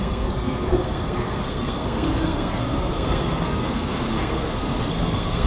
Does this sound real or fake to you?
fake